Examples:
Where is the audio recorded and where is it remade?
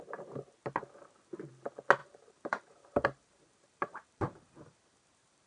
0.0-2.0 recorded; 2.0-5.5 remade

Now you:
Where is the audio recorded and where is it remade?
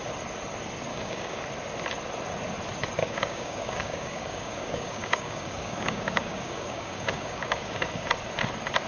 0.0-0.9 recorded; 0.9-1.4 remade; 1.4-3.0 recorded; 3.0-8.1 remade; 8.1-8.9 recorded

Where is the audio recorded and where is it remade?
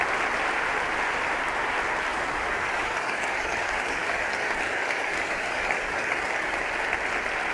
0.0-2.1 recorded; 2.1-6.6 remade; 6.6-7.5 recorded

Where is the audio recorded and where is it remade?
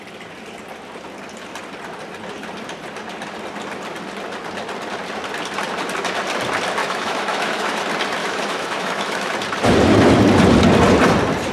0.0-6.8 recorded; 6.8-7.8 remade; 7.8-8.2 recorded; 8.2-9.3 remade; 9.3-11.5 recorded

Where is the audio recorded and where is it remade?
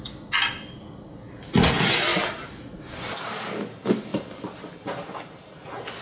0.0-6.0 recorded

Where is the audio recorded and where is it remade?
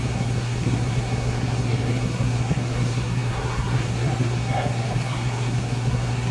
0.0-6.3 remade